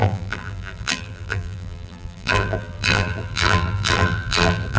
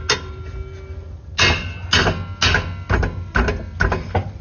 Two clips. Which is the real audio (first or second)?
second